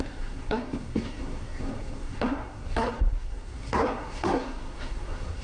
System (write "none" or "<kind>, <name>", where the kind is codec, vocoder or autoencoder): codec, SNAC